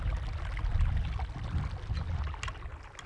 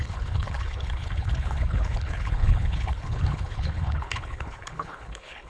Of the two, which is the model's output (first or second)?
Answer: second